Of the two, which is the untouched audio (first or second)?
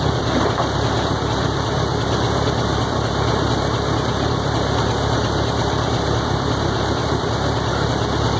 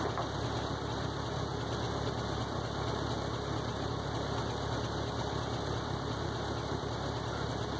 second